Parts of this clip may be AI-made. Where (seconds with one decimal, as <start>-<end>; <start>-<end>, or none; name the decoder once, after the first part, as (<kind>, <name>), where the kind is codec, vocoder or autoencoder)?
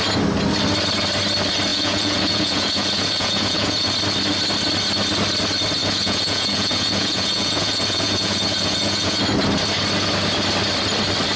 1.7-3.9 (vocoder, Vocos); 5.8-9.2